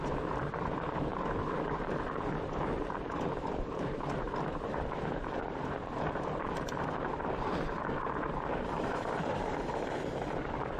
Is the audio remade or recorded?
remade